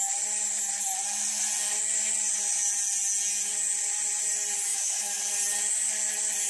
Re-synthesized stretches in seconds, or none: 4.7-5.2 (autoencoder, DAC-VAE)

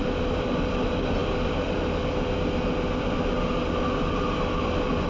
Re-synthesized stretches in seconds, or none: none

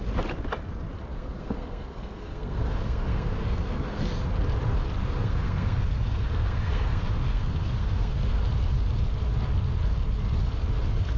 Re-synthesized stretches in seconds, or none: 1.1-4.0 (codec, SNAC); 5.0-8.4

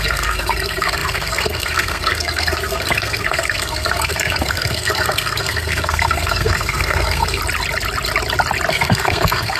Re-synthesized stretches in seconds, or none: 0.0-7.4 (codec, SNAC); 8.7-9.6

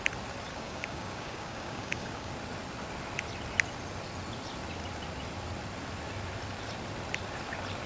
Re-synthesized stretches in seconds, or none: 0.5-2.3 (codec, DAC)

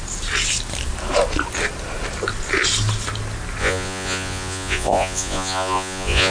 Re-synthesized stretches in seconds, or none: 3.6-6.3 (vocoder, Vocos)

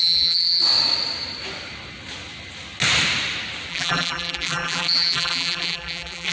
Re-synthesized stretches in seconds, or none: 0.0-0.6 (vocoder, BigVGAN v2); 3.7-6.3